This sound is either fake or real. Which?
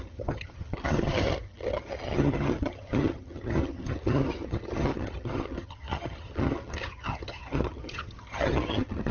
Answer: fake